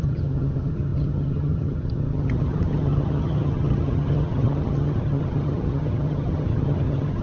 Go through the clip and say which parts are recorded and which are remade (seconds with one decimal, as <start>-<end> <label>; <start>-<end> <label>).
0.0-7.2 remade